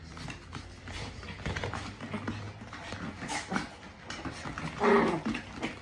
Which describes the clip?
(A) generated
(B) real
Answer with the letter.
B